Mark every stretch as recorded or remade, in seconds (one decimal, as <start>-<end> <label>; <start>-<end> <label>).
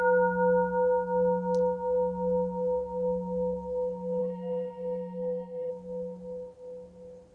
0.0-4.2 recorded; 4.2-5.7 remade; 5.7-7.3 recorded